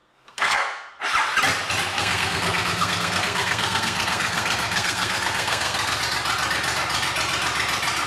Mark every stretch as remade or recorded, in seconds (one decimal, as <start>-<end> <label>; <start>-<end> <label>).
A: 0.0-1.0 remade; 1.0-1.9 recorded; 1.9-6.0 remade; 6.0-8.1 recorded